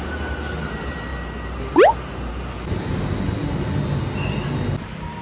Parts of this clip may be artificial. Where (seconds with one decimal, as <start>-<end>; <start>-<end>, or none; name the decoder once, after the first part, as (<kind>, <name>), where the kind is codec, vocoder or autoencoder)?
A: none